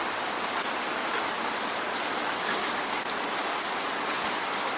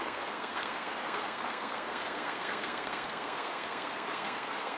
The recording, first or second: first